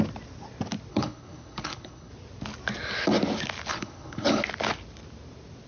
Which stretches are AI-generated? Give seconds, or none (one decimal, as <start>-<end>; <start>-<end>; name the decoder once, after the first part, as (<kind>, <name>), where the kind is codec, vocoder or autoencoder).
0.9-2.1 (codec, HILCodec); 3.7-4.4